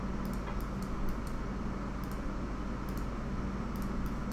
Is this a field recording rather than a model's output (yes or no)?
yes